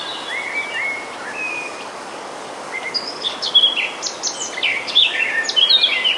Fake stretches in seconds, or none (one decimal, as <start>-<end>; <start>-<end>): 1.3-3.5; 4.7-5.3